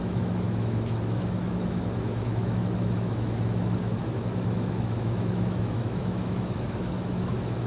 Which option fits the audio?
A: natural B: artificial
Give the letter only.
B